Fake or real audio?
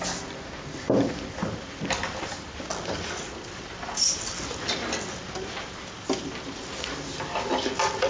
real